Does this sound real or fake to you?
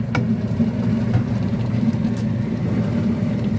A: real